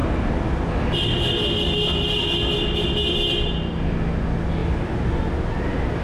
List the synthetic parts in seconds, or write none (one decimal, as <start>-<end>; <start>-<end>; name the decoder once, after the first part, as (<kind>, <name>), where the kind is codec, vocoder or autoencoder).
none